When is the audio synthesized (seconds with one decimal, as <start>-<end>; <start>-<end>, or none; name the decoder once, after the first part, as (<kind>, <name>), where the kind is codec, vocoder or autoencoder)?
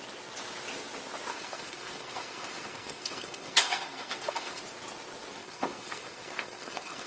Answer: 1.3-4.6 (codec, SNAC); 5.4-7.1